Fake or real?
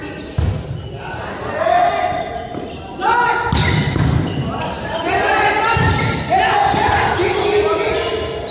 real